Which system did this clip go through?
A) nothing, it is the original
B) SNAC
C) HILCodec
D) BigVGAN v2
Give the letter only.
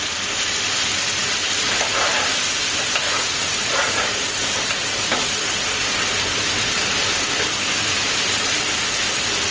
D